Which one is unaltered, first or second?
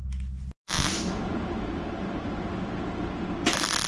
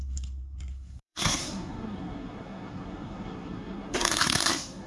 first